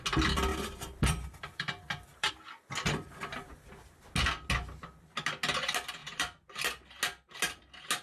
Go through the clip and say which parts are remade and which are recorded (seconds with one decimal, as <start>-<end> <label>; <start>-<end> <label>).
0.0-0.5 recorded; 0.5-2.3 remade; 2.3-6.0 recorded; 6.0-7.0 remade; 7.0-8.0 recorded